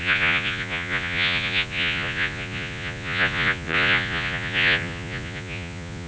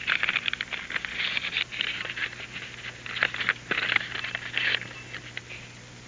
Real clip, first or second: second